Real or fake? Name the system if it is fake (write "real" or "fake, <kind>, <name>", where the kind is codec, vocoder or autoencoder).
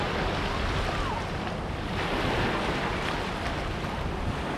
real